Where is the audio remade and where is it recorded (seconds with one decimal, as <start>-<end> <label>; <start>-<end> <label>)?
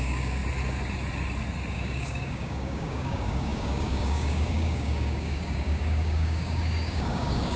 0.0-0.4 remade; 0.4-1.7 recorded; 1.7-7.6 remade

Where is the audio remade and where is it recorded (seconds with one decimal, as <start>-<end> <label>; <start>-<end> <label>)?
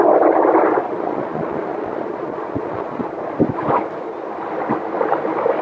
0.0-0.8 recorded; 0.8-3.1 remade; 3.1-5.6 recorded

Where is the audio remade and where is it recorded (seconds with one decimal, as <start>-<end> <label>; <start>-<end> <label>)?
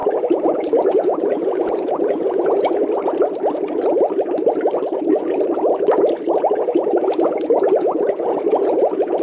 0.0-2.8 remade; 2.8-6.3 recorded; 6.3-9.2 remade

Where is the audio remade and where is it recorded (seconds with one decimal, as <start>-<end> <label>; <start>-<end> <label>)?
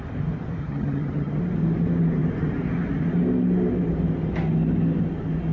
0.0-0.6 recorded; 0.6-1.4 remade; 1.4-5.5 recorded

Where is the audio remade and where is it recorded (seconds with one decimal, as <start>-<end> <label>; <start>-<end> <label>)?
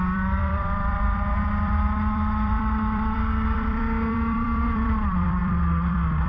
0.0-6.3 remade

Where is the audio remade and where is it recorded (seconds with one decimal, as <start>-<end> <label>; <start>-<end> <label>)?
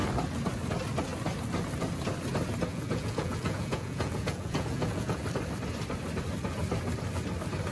0.0-2.7 recorded; 2.7-5.2 remade; 5.2-7.7 recorded